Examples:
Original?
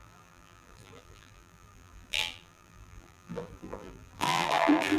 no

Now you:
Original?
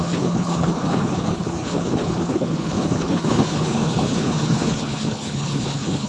no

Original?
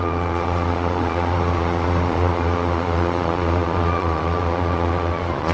no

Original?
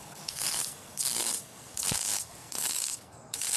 no